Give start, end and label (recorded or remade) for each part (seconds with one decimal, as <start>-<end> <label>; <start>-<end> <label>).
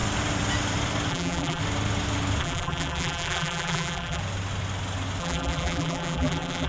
0.0-1.1 recorded; 1.1-1.6 remade; 1.6-2.4 recorded; 2.4-4.2 remade; 4.2-5.2 recorded; 5.2-6.7 remade